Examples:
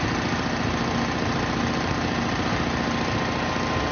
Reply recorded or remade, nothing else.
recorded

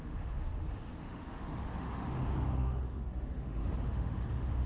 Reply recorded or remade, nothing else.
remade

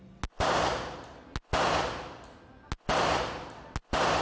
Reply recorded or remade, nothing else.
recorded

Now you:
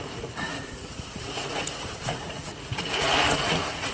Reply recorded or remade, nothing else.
remade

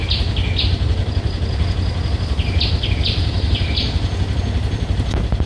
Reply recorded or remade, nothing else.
recorded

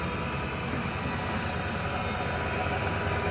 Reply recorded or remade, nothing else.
recorded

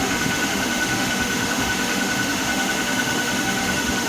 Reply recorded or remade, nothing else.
remade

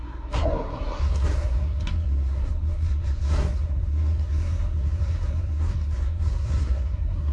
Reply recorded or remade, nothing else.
remade